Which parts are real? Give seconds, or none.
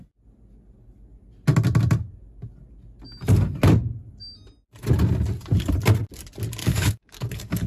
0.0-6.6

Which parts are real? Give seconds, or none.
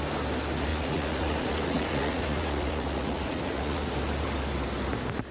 0.0-0.7; 3.9-5.3